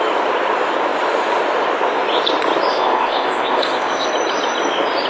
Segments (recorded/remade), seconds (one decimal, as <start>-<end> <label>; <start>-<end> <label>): 0.0-2.7 recorded; 2.7-4.1 remade; 4.1-5.1 recorded